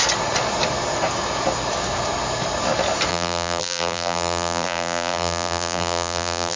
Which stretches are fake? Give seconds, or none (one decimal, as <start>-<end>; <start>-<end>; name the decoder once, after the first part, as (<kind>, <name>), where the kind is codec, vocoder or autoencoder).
3.1-6.6 (vocoder, BigVGAN v2)